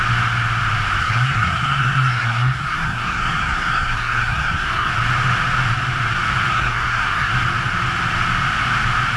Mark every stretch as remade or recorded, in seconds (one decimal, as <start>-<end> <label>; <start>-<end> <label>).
0.0-1.0 recorded; 1.0-4.9 remade; 4.9-6.5 recorded; 6.5-7.3 remade; 7.3-9.2 recorded